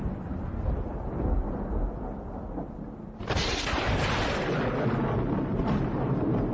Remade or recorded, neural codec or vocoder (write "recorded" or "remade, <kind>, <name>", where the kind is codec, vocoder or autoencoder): recorded